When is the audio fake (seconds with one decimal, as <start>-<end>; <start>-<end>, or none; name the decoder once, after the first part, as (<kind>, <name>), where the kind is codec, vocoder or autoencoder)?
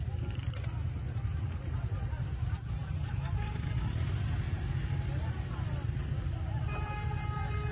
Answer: none